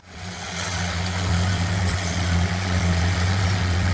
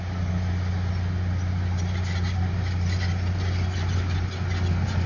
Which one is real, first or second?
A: second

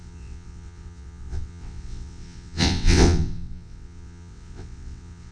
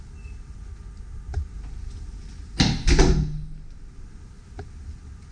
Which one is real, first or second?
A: second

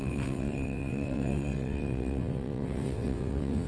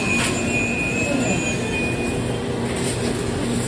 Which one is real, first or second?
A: second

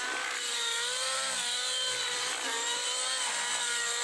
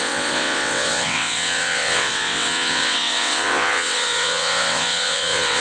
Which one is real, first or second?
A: first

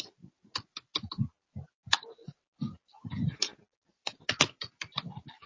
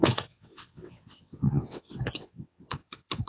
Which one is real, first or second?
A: first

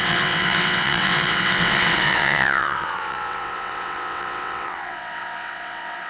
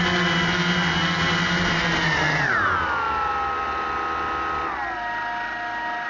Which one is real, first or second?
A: second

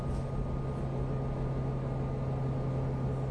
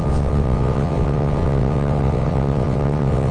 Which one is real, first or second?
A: first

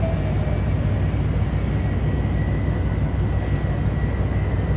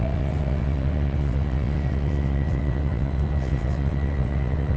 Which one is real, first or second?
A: first